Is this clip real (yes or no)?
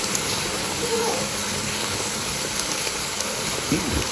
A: no